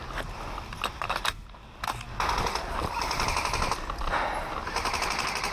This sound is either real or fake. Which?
real